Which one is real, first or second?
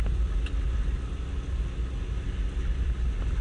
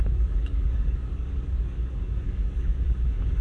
first